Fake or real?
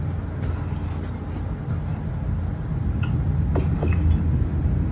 real